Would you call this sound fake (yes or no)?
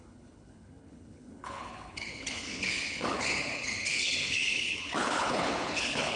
yes